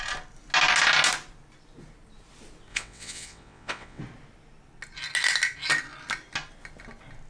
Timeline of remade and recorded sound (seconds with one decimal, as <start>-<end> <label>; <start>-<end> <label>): 0.0-2.7 recorded; 2.7-4.0 remade; 4.0-7.3 recorded